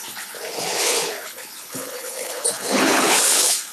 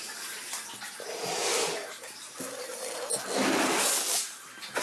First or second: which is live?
second